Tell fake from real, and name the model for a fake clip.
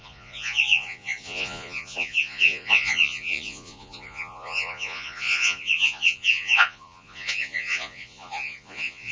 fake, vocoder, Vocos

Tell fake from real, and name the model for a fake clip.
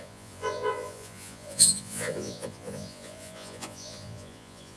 fake, vocoder, Vocos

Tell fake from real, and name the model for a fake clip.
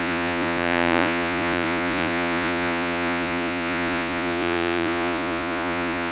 fake, vocoder, Vocos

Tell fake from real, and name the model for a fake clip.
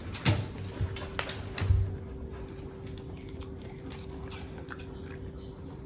real